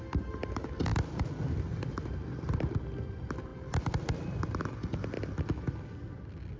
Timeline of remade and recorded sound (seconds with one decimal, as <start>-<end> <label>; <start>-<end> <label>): 0.0-0.9 recorded; 0.9-2.8 remade; 2.8-3.5 recorded; 3.5-4.6 remade; 4.6-6.6 recorded